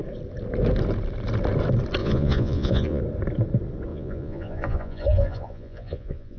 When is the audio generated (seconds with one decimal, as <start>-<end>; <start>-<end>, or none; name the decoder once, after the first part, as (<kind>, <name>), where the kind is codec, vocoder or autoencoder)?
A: 2.0-3.0 (vocoder, Vocos); 3.9-6.4